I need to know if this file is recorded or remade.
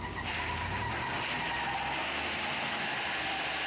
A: recorded